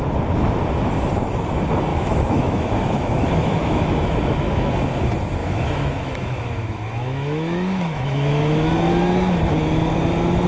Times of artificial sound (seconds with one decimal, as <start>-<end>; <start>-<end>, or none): 1.9-4.7; 5.4-8.7